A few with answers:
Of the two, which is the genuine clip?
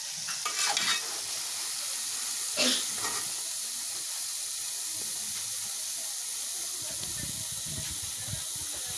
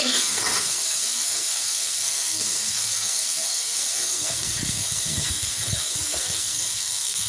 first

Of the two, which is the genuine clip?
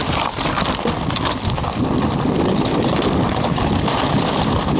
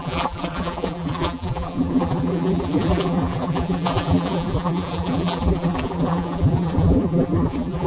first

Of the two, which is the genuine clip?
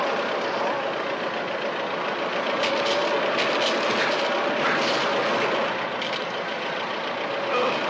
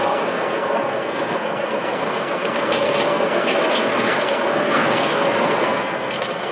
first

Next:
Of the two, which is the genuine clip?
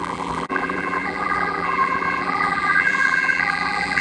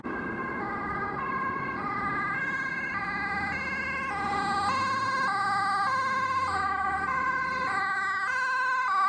second